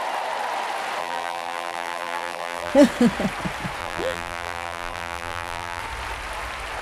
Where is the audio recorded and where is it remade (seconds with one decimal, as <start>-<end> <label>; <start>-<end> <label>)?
0.0-1.0 recorded; 1.0-2.7 remade; 2.7-3.8 recorded; 3.8-5.8 remade; 5.8-6.8 recorded